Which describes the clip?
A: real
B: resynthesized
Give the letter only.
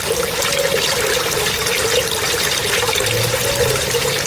A